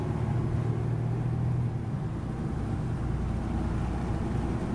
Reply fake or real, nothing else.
real